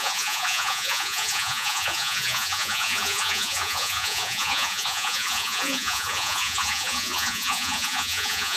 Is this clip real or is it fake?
fake